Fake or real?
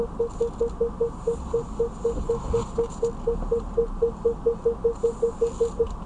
real